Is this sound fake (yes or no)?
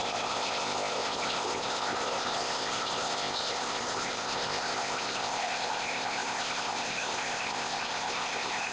yes